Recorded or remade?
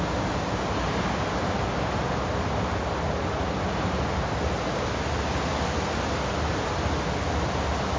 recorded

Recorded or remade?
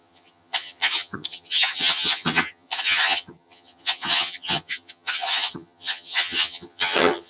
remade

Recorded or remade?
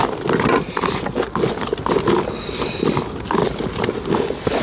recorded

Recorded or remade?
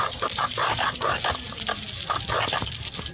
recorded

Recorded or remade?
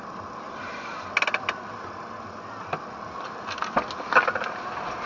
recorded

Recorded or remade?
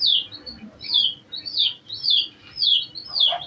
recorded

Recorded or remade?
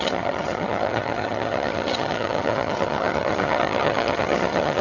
remade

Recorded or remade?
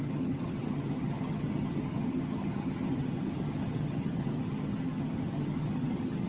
remade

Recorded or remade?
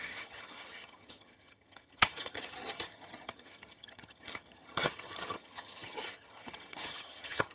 remade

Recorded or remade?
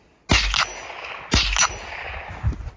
recorded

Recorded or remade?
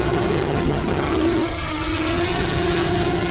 remade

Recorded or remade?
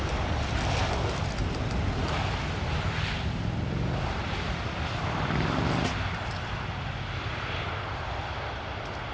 recorded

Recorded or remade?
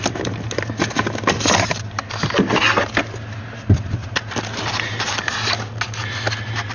recorded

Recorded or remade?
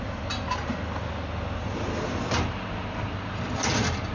recorded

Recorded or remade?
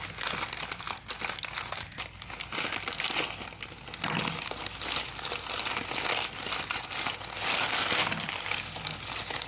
recorded